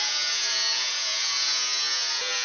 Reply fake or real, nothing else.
fake